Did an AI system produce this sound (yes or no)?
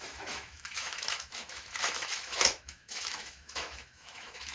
yes